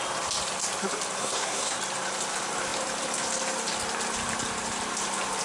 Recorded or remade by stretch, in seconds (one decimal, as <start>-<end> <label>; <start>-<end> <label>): 0.0-1.2 recorded; 1.2-1.8 remade; 1.8-5.4 recorded